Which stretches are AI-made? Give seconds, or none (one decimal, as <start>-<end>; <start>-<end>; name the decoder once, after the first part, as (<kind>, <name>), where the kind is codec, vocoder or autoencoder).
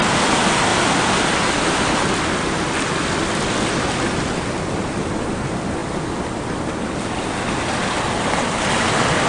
none